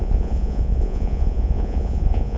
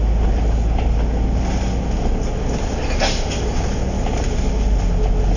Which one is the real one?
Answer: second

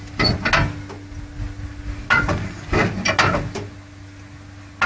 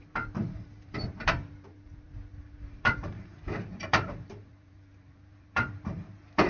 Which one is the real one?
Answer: first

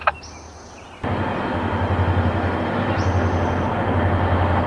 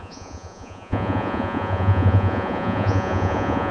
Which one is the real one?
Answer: first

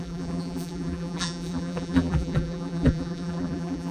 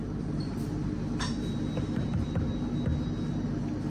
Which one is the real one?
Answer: second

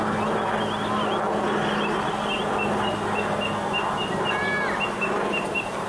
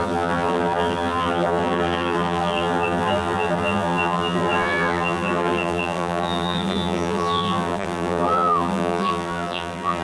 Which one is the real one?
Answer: first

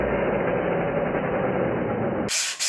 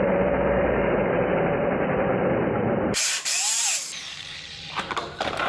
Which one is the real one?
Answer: first